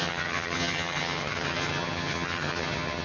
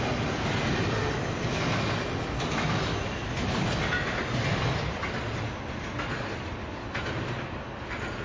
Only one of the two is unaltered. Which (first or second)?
second